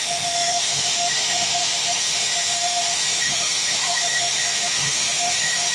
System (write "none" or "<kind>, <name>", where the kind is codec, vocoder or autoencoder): autoencoder, DAC-VAE